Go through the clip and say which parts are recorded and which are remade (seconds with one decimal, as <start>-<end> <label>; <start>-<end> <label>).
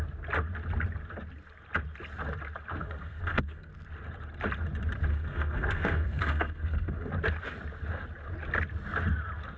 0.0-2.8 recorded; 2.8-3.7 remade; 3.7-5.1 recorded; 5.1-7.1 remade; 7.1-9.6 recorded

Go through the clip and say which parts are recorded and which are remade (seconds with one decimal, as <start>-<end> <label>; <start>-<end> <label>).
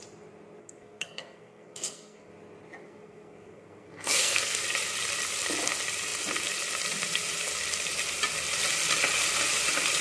0.0-0.6 recorded; 0.6-2.3 remade; 2.3-2.8 recorded; 2.8-4.6 remade; 4.6-10.0 recorded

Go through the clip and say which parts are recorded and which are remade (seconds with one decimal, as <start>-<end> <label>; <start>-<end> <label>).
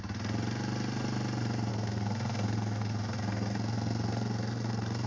0.0-1.7 recorded; 1.7-5.1 remade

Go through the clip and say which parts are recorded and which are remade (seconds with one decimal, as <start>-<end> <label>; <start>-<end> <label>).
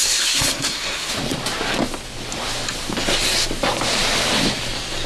0.0-1.1 remade; 1.1-5.1 recorded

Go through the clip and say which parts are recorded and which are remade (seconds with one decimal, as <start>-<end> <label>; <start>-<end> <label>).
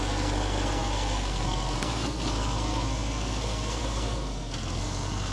0.0-5.3 remade